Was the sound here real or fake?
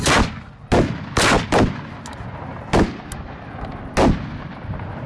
real